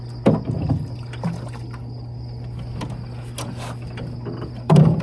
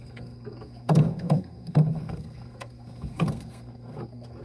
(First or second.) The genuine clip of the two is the first